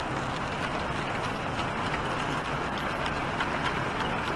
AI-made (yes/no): yes